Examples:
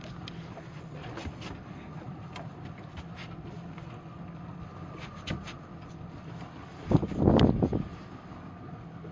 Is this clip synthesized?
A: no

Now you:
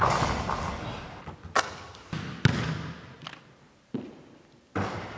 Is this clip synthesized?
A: no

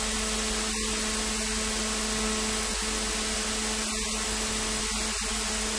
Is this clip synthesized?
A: no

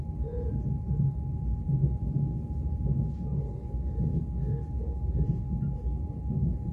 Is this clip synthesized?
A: no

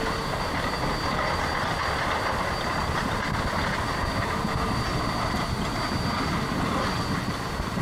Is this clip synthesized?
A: no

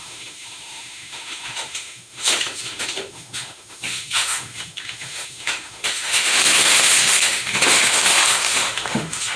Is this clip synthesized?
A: yes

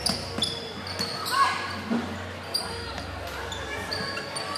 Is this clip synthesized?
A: no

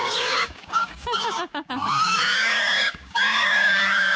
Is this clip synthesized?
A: yes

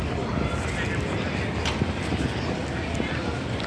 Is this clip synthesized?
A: no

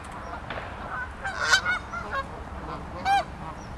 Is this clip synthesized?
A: no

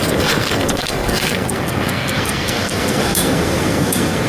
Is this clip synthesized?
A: yes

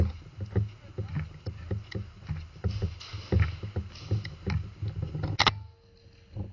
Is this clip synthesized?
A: no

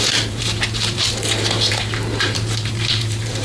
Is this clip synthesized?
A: yes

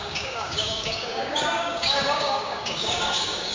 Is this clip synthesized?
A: yes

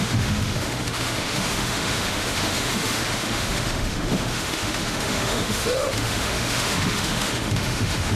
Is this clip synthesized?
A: yes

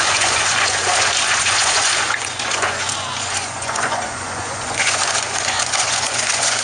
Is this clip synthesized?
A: yes